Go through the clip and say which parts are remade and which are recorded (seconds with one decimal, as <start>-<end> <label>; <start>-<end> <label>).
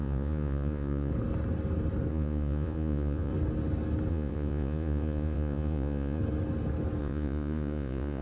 0.0-1.1 remade; 1.1-2.1 recorded; 2.1-3.3 remade; 3.3-4.1 recorded; 4.1-6.2 remade; 6.2-7.0 recorded; 7.0-8.2 remade